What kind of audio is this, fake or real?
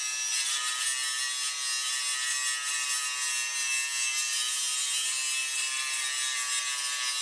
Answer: real